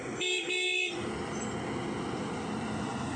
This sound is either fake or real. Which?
real